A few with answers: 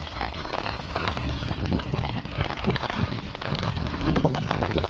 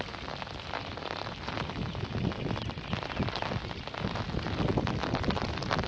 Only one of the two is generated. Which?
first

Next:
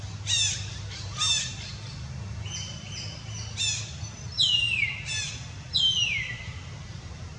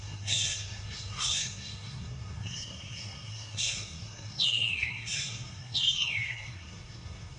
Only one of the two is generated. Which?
second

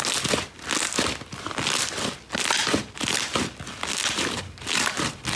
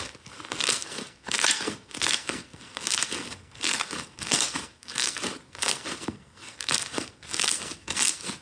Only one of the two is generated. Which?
second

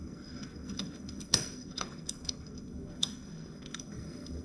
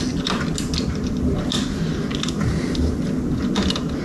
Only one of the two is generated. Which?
first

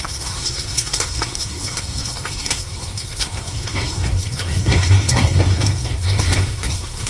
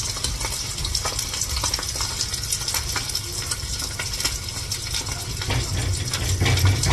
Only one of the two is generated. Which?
first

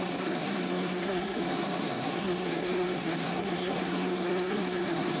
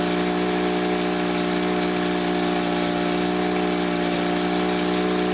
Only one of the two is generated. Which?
first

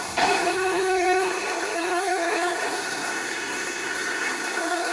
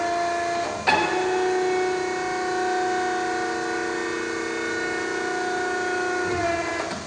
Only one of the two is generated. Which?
first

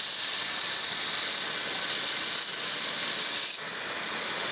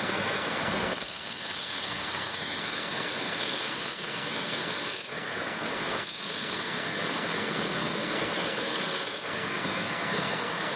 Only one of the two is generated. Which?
second